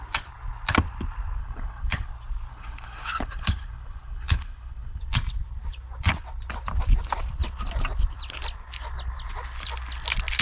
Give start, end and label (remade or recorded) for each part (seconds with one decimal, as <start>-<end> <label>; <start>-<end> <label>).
0.0-1.4 recorded; 1.4-2.1 remade; 2.1-2.5 recorded; 2.5-5.0 remade; 5.0-10.4 recorded